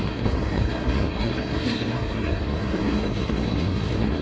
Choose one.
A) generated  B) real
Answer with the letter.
A